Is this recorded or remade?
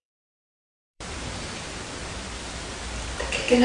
remade